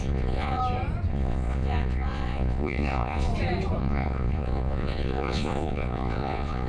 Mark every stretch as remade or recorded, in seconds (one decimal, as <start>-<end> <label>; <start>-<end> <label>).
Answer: 0.0-0.6 remade; 0.6-1.1 recorded; 1.1-3.3 remade; 3.3-3.8 recorded; 3.8-6.7 remade